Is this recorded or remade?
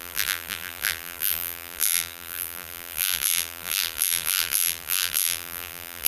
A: remade